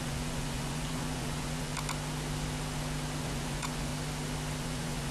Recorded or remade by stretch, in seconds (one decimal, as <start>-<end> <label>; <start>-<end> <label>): 0.0-1.7 remade; 1.7-3.2 recorded; 3.2-3.9 remade; 3.9-4.6 recorded; 4.6-5.1 remade